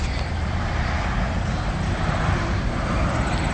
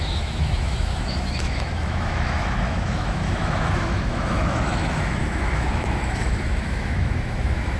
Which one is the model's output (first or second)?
second